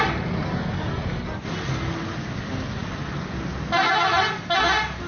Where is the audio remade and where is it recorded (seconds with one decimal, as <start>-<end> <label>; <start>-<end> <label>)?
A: 0.0-5.1 recorded